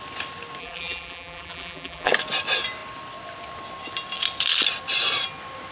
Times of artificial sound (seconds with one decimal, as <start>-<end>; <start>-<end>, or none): 0.6-2.1